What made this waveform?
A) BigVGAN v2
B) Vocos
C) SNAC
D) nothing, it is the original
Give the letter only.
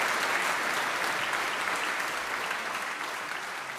D